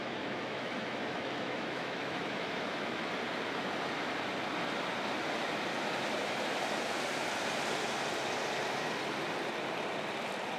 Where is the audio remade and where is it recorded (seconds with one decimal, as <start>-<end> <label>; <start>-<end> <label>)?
0.0-3.1 remade; 3.1-10.6 recorded